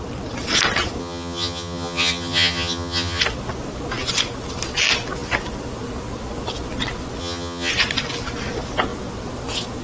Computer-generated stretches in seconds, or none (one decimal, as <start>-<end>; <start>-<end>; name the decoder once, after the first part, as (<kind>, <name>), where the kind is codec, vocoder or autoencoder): 1.0-3.2 (vocoder, HiFi-GAN); 7.2-7.7